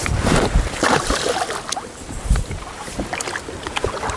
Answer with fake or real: real